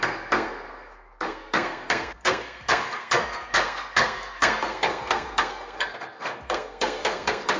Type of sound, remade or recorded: remade